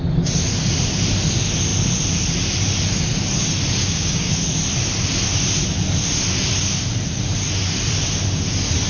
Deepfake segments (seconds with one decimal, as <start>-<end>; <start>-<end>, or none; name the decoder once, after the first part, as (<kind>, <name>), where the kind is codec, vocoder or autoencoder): 3.8-4.3 (codec, DAC)